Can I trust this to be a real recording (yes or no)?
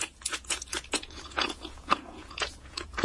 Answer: no